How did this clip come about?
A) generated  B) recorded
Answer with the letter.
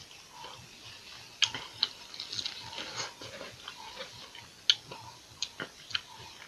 B